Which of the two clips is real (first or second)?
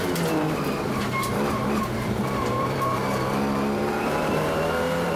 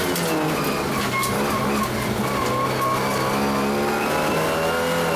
second